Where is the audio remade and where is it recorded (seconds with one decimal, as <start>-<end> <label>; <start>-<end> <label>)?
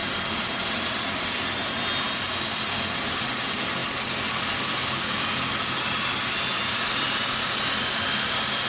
0.0-8.7 recorded